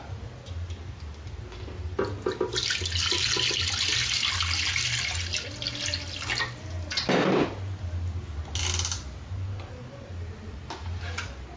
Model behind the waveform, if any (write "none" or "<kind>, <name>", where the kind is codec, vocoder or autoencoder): none